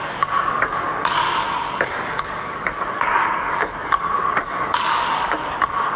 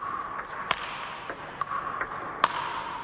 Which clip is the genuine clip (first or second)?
second